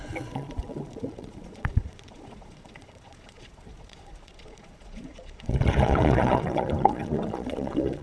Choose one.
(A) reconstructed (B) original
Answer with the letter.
A